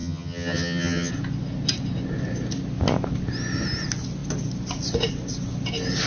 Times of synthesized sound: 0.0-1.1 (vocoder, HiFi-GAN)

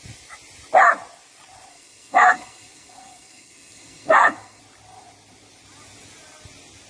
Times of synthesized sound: 1.7-4.6 (codec, SNAC)

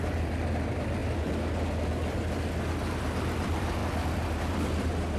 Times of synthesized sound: 0.0-1.0 (vocoder, BigVGAN v2); 2.7-5.2

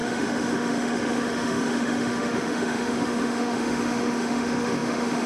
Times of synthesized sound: 0.0-5.3 (autoencoder, DAC-VAE)

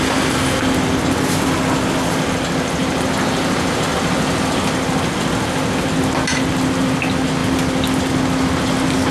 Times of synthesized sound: none

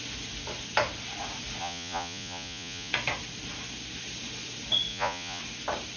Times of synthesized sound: 1.6-2.9 (vocoder, Vocos); 4.9-5.4